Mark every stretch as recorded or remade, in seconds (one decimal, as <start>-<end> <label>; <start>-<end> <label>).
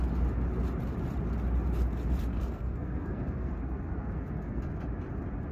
0.0-2.3 recorded; 2.3-4.6 remade; 4.6-5.5 recorded